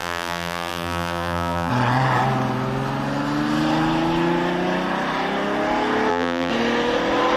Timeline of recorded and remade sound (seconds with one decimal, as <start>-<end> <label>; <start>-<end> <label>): 0.0-1.7 remade; 1.7-6.1 recorded; 6.1-6.5 remade; 6.5-7.4 recorded